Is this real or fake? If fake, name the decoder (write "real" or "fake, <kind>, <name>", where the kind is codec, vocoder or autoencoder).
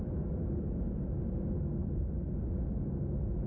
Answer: real